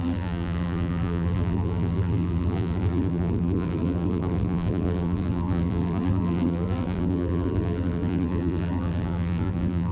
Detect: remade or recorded remade